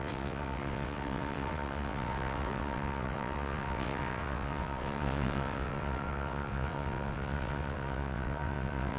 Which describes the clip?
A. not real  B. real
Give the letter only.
A